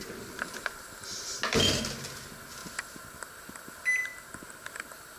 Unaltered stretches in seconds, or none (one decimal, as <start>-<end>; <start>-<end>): 0.0-4.1; 4.7-5.2